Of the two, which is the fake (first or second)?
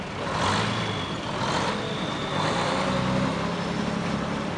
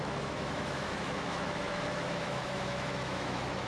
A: second